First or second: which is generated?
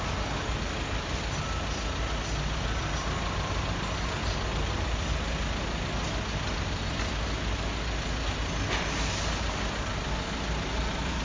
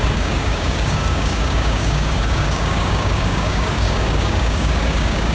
second